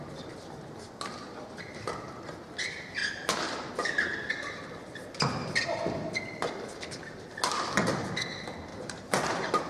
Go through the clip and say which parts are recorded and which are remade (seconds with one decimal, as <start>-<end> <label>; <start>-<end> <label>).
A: 0.0-3.0 recorded; 3.0-3.7 remade; 3.7-8.7 recorded; 8.7-9.7 remade